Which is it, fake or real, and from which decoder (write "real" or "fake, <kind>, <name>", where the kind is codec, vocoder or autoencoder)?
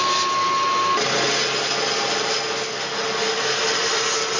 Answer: real